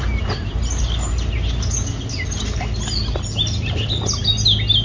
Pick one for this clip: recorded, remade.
recorded